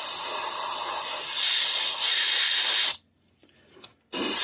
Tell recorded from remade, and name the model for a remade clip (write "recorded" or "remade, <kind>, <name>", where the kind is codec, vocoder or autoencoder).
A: recorded